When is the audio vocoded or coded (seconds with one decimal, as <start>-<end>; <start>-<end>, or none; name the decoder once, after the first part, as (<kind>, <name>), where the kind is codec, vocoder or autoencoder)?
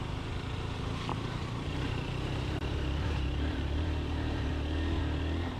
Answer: 1.1-4.5 (vocoder, BigVGAN v2)